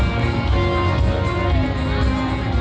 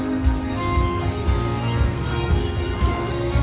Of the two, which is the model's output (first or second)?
second